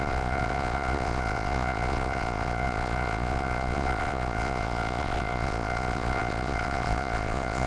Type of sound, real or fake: fake